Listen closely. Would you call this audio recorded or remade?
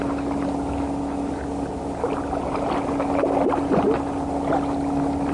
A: recorded